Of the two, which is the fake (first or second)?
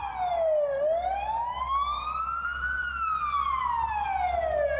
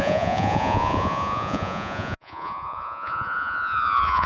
second